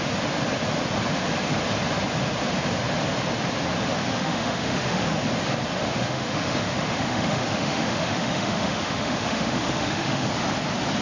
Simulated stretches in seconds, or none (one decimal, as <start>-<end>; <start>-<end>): 4.1-5.2; 5.8-10.3